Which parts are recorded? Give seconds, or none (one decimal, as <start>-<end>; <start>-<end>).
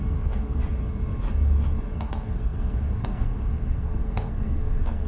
0.6-1.9